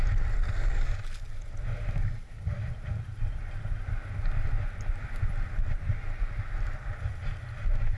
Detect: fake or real real